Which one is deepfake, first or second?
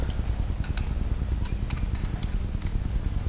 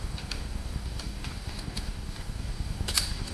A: second